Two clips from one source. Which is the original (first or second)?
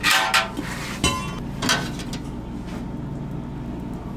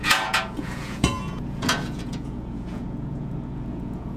first